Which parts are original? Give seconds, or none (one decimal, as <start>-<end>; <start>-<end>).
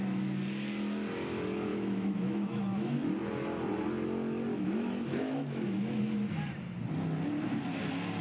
0.0-1.7; 3.1-4.5; 6.0-8.2